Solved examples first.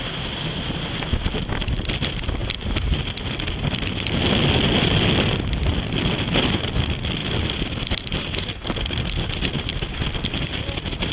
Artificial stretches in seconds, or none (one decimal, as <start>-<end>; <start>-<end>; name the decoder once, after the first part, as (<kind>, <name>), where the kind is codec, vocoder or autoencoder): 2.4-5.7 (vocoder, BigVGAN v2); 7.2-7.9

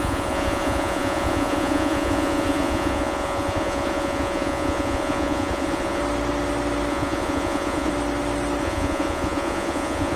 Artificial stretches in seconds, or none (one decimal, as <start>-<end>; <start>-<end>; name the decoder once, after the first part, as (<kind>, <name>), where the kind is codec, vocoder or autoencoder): 0.0-6.0 (vocoder, Vocos); 6.9-7.9; 8.6-10.2

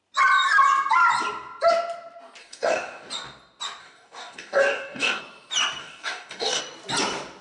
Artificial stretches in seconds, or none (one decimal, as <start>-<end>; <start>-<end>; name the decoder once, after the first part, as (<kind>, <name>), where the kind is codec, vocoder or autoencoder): 2.4-3.1 (codec, DAC); 3.8-5.2; 5.8-6.6

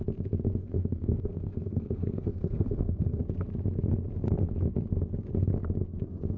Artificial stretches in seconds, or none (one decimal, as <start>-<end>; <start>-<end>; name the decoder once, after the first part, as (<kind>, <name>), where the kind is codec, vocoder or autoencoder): 0.6-3.2 (codec, SNAC)

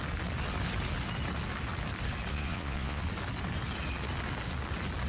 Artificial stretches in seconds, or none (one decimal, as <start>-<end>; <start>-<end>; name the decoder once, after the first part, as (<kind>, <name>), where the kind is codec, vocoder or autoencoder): 2.3-3.0 (vocoder, Vocos)

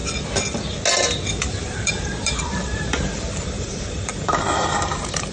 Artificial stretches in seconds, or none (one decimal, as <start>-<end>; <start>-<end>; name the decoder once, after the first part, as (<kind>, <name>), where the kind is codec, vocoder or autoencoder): 1.3-5.3 (vocoder, BigVGAN v2)